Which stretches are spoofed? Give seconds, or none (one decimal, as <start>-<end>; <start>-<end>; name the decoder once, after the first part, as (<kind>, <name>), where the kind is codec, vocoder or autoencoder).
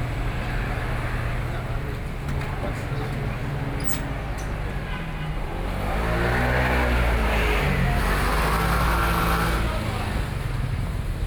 none